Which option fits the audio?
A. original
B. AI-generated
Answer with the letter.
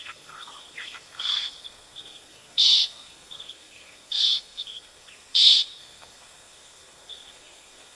B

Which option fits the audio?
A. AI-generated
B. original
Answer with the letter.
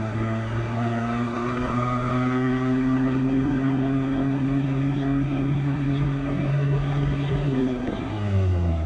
A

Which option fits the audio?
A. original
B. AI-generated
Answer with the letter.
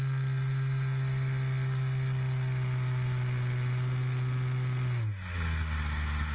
A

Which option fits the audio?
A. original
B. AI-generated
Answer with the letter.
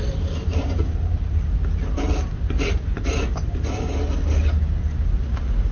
A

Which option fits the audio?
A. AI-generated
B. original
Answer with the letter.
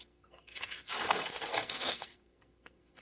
A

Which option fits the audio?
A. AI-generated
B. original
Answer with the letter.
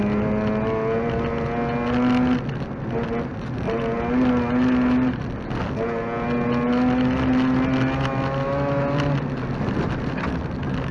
B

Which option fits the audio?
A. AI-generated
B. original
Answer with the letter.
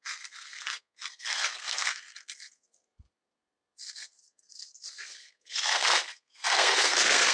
A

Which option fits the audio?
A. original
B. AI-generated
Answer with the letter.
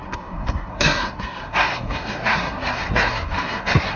B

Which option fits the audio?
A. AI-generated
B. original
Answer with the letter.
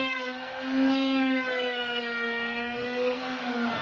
A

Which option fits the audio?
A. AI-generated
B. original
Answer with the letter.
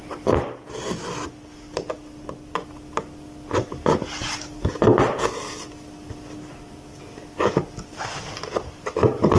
B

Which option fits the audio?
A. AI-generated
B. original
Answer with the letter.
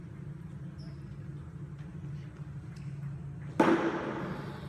B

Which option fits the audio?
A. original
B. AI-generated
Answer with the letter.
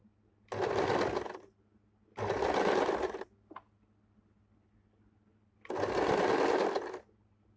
A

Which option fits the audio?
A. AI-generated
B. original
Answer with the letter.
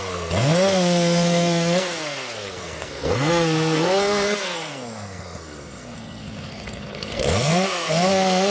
A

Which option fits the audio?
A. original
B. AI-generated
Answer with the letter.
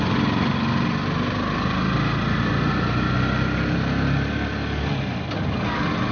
A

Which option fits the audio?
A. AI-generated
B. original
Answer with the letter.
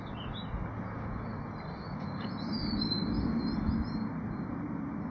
B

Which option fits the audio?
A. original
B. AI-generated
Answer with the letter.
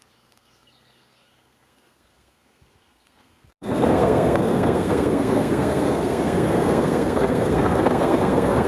B